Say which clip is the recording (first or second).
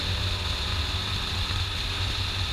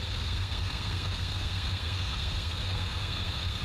first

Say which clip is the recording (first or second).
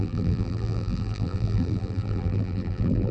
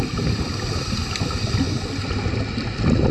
second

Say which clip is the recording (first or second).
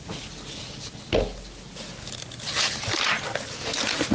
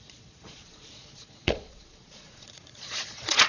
first